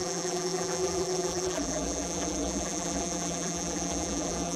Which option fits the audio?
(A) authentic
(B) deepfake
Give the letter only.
B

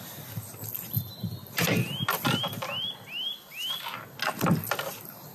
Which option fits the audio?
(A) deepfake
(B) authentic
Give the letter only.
B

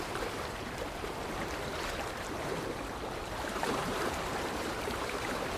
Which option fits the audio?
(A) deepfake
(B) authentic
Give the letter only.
A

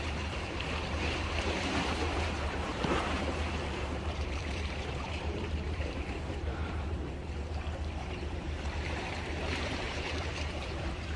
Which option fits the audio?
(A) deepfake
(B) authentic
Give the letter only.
A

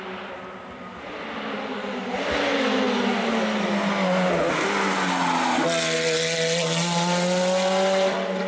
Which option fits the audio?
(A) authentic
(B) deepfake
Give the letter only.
A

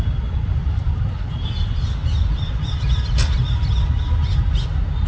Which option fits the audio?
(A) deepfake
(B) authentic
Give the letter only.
B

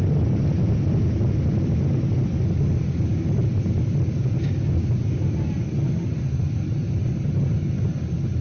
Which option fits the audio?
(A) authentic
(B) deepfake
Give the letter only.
A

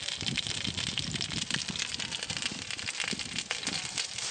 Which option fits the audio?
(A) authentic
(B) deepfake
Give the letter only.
B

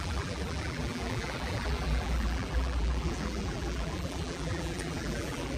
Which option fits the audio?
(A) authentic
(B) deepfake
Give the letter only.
B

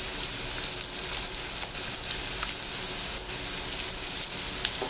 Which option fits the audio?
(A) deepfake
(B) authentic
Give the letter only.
B